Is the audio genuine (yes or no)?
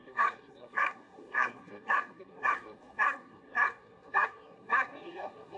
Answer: no